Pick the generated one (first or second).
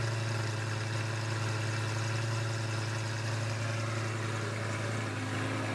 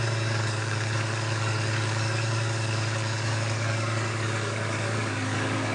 second